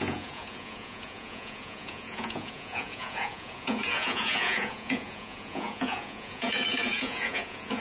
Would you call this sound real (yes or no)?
no